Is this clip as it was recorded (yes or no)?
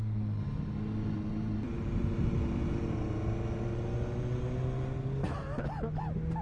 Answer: yes